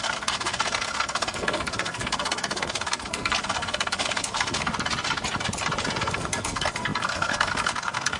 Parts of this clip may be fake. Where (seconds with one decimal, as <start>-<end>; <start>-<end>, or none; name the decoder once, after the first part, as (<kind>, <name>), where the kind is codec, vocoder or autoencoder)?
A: 0.0-4.7 (codec, SNAC); 6.0-8.2